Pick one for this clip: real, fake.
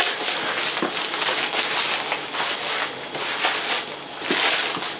real